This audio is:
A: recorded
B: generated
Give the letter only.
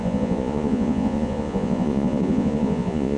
B